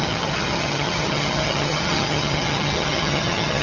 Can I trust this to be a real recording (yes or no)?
no